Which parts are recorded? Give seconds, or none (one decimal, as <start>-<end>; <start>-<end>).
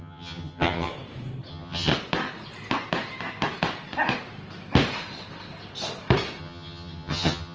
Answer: 0.9-1.5; 1.9-6.4